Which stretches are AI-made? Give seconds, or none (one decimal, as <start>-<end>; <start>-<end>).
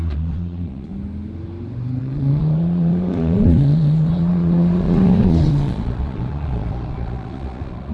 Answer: 0.0-0.9; 2.0-7.9